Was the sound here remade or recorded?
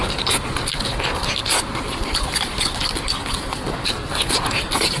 recorded